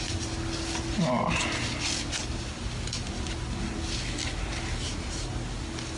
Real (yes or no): yes